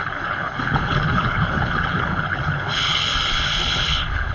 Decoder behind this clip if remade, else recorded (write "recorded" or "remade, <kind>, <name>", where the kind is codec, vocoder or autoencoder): remade, codec, HILCodec